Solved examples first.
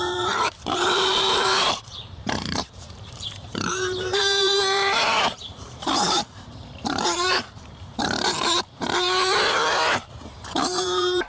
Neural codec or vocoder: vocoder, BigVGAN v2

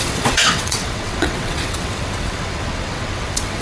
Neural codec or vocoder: vocoder, WaveNeXt